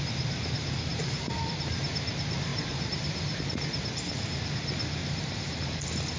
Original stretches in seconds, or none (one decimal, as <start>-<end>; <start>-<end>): 0.0-0.9; 1.4-2.5; 3.4-5.0; 5.6-6.2